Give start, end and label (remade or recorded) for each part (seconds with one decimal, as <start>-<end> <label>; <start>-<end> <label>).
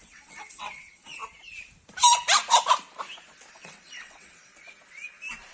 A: 0.0-1.2 remade; 1.2-3.5 recorded; 3.5-4.5 remade; 4.5-5.5 recorded